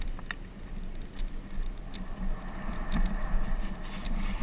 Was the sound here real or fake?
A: real